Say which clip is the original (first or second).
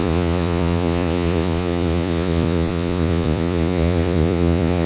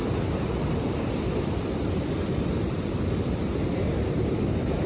second